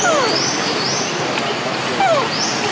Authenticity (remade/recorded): recorded